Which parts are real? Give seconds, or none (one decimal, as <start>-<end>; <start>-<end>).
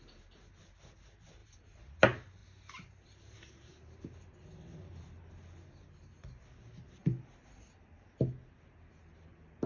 0.0-9.7